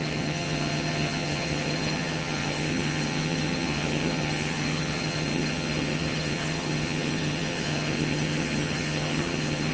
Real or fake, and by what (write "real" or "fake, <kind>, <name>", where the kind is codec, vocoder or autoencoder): fake, vocoder, HiFi-GAN